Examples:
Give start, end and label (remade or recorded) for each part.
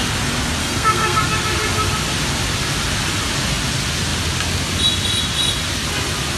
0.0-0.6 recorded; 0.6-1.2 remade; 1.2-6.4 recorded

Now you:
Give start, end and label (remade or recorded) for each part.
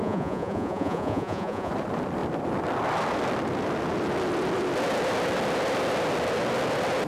0.0-1.7 remade; 1.7-7.1 recorded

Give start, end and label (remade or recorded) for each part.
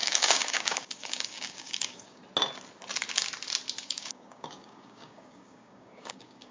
0.0-2.2 remade; 2.2-3.8 recorded; 3.8-6.5 remade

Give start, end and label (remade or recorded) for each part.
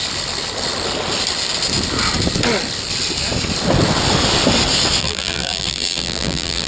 0.0-5.0 recorded; 5.0-6.7 remade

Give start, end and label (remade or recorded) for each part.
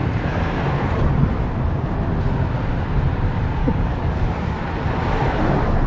0.0-3.6 recorded; 3.6-4.6 remade; 4.6-5.9 recorded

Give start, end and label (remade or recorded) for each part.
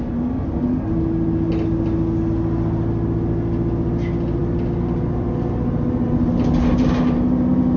0.0-7.8 recorded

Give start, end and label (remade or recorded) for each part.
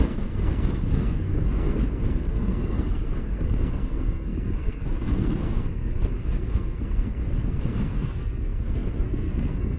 0.0-9.8 remade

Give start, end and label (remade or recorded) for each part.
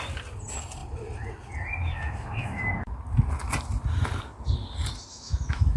0.0-1.8 recorded; 1.8-2.7 remade; 2.7-5.1 recorded; 5.1-5.8 remade